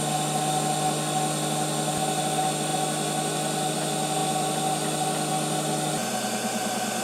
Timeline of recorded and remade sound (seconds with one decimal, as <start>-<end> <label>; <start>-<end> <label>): 0.0-7.0 recorded